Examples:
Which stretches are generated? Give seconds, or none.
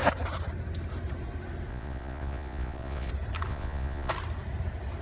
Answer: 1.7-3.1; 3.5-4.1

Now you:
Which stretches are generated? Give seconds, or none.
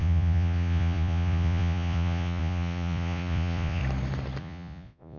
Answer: 0.0-3.8; 4.4-5.2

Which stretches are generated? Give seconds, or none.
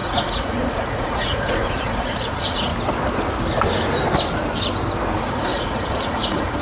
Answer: 0.0-2.7; 5.2-6.6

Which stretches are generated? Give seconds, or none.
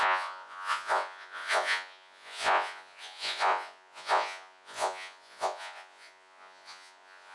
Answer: 0.0-7.3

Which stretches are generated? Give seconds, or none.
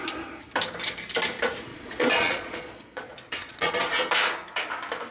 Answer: 1.7-3.7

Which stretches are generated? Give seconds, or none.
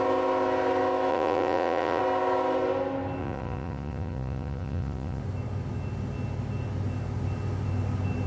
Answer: 1.1-2.0; 3.2-5.2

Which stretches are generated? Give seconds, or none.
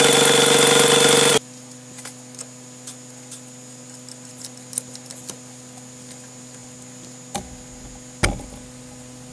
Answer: none